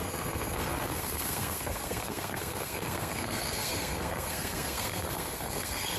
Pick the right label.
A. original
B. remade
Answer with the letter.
B